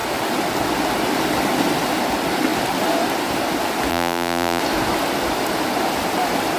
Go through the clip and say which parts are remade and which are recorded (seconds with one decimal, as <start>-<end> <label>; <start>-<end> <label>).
0.0-3.9 recorded; 3.9-4.6 remade; 4.6-6.6 recorded